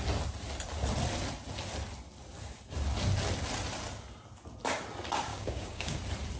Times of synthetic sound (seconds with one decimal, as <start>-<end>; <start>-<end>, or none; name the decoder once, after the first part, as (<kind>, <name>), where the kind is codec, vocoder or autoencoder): 5.3-6.0 (codec, DAC)